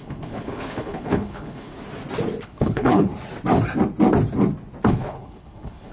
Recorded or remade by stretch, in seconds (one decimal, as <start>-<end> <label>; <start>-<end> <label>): 0.0-1.7 remade; 1.7-2.4 recorded; 2.4-3.1 remade; 3.1-4.9 recorded; 4.9-5.9 remade